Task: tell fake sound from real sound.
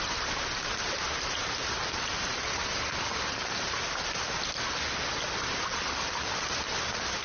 real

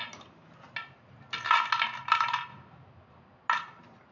real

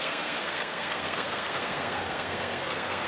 fake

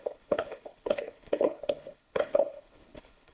fake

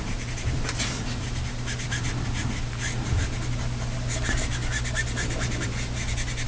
real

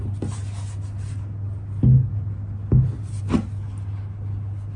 real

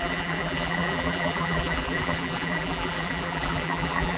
fake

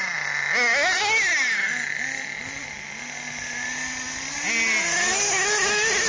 real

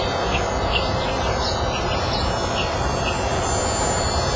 real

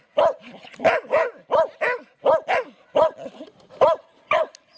real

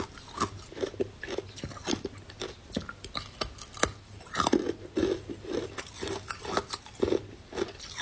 real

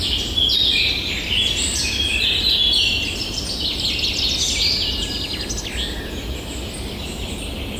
real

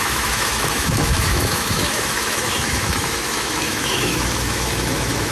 fake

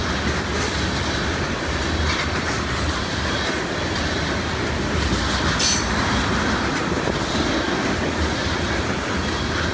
real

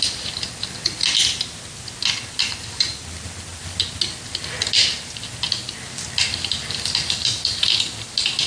real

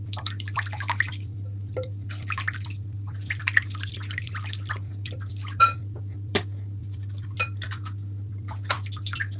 fake